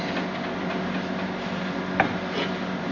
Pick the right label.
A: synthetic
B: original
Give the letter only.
B